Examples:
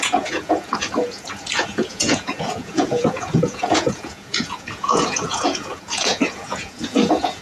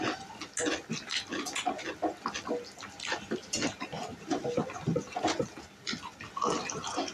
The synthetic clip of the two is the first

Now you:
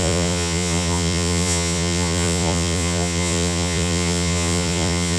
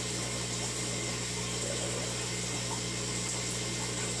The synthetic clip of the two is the first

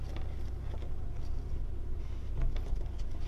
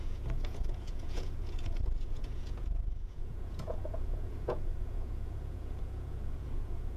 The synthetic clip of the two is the second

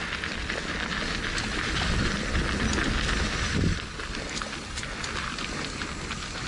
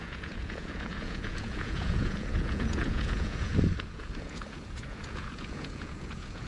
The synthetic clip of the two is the second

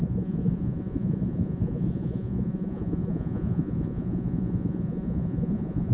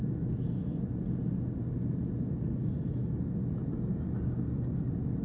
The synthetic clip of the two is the first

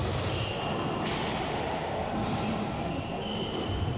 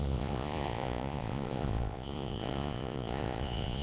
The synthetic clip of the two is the second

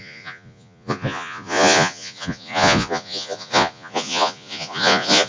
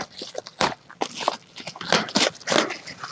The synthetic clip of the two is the first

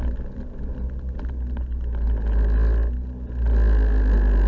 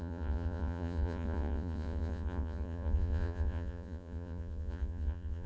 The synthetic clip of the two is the second